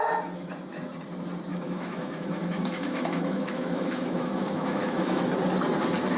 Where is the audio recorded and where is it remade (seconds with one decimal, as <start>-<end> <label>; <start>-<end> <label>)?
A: 0.0-1.5 recorded; 1.5-5.2 remade; 5.2-6.2 recorded